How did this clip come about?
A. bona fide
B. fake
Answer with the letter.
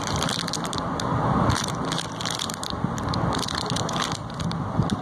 A